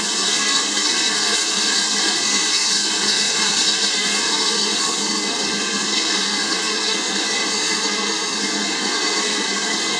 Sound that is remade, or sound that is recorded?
remade